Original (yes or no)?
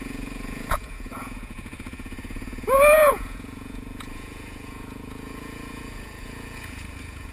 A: no